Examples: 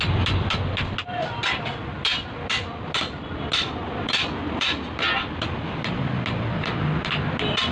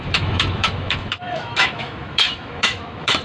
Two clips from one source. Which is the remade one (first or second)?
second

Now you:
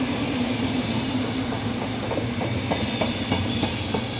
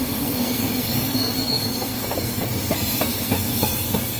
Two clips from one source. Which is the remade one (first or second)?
second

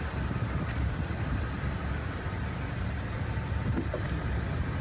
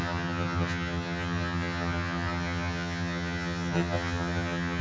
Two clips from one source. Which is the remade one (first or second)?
second